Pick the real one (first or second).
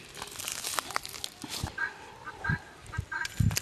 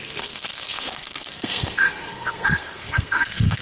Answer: first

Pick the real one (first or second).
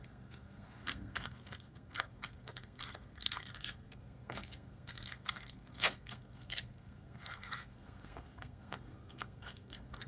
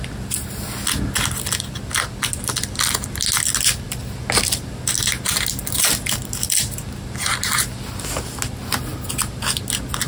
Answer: second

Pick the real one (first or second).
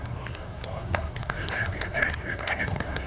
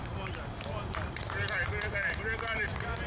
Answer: second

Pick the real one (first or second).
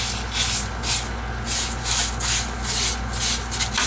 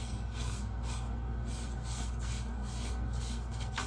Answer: first